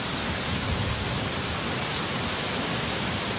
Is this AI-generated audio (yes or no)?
no